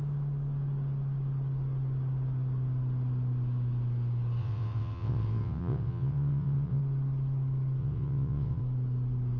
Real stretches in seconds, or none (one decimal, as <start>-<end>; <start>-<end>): 0.0-4.4; 6.8-7.8; 8.6-9.4